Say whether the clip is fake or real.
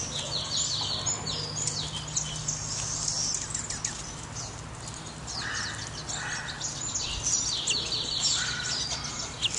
real